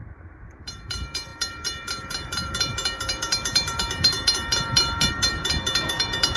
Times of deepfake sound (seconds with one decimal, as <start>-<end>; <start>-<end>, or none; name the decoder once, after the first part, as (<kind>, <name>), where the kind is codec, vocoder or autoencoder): 0.0-6.4 (vocoder, BigVGAN v2)